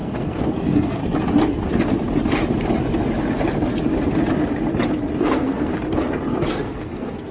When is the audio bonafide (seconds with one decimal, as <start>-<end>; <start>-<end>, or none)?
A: 1.0-5.2; 5.7-6.5